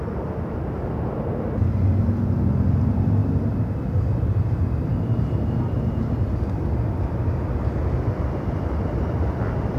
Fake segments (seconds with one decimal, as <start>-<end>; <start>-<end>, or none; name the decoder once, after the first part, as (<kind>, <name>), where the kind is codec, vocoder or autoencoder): none